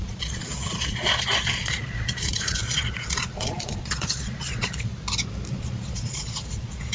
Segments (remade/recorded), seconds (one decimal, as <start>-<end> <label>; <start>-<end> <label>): 0.0-4.9 remade; 4.9-5.5 recorded; 5.5-6.9 remade